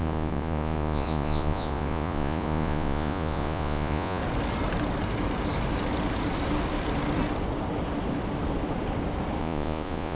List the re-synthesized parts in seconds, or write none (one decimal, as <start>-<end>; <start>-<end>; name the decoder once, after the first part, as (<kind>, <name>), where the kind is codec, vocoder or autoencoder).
0.0-4.2 (vocoder, Vocos); 9.4-10.2